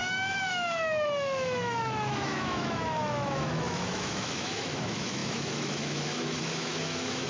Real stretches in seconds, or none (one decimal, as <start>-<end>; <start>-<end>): none